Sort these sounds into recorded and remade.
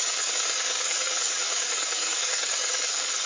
remade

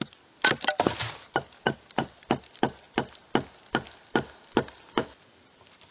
recorded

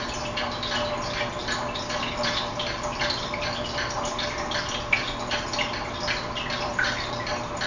recorded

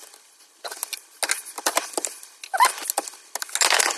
recorded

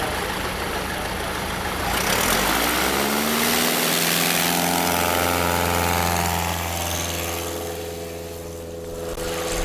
recorded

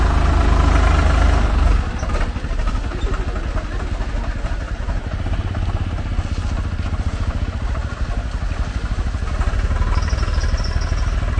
recorded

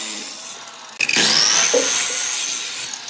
recorded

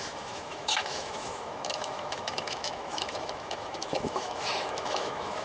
remade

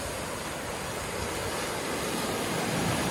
recorded